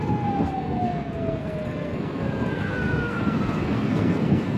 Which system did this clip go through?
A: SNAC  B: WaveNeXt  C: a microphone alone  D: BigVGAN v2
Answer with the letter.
A